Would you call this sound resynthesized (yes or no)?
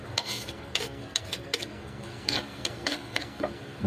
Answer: yes